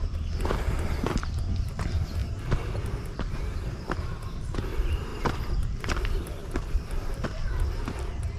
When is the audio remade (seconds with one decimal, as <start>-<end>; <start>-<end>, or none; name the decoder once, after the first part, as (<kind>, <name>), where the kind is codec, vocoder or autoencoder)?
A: 0.0-2.2 (vocoder, BigVGAN v2); 4.3-5.1; 5.8-8.4